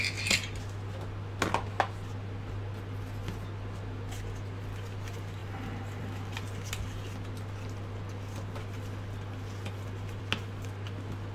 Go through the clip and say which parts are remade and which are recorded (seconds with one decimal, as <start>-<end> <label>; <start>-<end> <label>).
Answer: 0.0-11.3 recorded